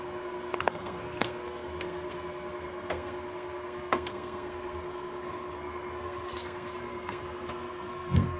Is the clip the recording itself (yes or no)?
no